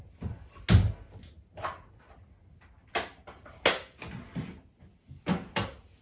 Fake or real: real